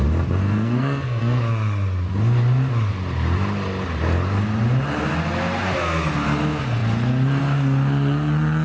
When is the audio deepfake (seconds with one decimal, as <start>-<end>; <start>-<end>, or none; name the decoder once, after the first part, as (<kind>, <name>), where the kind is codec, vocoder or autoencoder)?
0.4-1.4 (codec, SNAC)